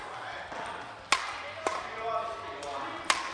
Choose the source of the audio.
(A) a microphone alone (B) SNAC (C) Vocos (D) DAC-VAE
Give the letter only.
A